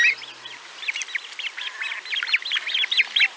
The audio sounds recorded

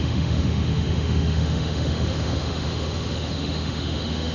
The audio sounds remade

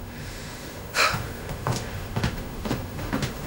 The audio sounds remade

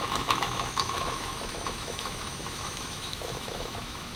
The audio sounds remade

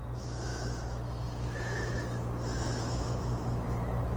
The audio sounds remade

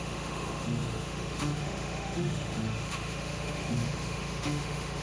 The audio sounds remade